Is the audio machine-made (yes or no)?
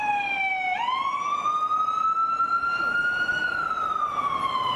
no